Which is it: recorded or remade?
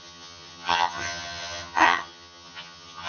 remade